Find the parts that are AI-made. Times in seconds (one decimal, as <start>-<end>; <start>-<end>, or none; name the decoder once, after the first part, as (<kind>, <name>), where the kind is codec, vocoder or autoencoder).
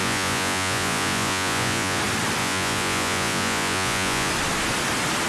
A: 0.0-2.0 (vocoder, Vocos); 2.4-4.3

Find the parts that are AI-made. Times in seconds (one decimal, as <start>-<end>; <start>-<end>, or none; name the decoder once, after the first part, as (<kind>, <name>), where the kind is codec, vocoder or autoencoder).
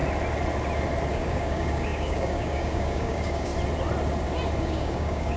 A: 1.1-3.5 (codec, DAC); 4.6-5.4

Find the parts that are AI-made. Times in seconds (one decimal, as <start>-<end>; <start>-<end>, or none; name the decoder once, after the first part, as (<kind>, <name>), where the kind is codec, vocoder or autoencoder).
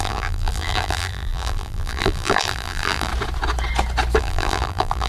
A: 0.0-3.1 (vocoder, BigVGAN v2); 4.2-5.1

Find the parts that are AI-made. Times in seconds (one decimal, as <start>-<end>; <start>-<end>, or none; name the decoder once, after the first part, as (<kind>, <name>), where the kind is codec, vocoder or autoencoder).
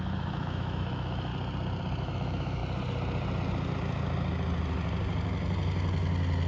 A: 0.0-1.3 (autoencoder, DAC-VAE); 2.0-2.6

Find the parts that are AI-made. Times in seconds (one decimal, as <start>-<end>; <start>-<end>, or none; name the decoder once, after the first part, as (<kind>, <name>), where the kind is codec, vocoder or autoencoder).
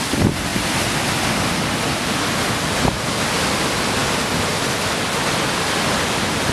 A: none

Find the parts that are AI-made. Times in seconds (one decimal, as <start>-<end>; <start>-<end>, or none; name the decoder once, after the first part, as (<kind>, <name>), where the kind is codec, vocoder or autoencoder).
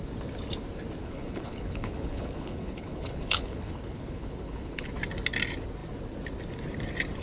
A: 1.0-4.9 (codec, HILCodec)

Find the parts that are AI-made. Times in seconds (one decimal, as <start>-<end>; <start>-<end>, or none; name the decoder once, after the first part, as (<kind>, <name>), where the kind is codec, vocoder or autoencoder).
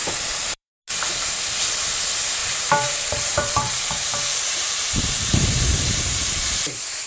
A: 0.0-0.7 (vocoder, BigVGAN v2); 2.4-7.1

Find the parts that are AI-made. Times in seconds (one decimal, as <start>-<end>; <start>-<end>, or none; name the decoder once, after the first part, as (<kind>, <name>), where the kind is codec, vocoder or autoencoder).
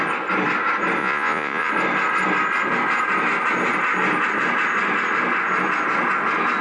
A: 1.0-1.7 (vocoder, Vocos)